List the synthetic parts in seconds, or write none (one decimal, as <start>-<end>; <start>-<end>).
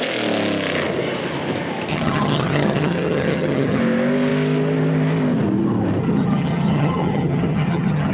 1.9-3.8; 6.0-8.1